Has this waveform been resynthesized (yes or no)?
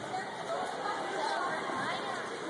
no